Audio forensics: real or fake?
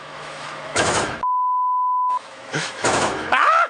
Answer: fake